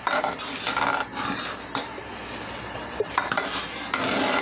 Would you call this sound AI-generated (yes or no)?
no